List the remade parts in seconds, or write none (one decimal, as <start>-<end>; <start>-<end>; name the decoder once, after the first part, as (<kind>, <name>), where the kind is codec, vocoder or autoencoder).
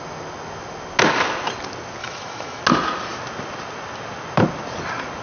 2.0-2.6 (autoencoder, DAC-VAE)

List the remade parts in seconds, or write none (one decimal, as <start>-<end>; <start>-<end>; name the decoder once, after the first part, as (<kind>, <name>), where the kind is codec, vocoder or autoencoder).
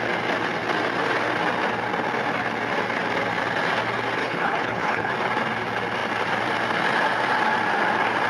4.2-5.1 (codec, HILCodec)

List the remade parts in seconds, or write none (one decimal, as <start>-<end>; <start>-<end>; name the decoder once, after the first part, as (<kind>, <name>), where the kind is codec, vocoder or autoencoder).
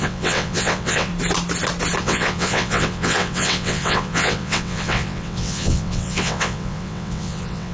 0.0-1.1 (vocoder, WaveNeXt); 2.0-7.7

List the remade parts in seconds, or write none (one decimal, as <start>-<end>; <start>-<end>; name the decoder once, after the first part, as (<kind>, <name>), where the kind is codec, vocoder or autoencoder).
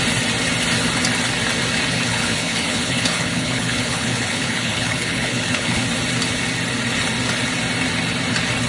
1.9-5.8 (codec, HILCodec)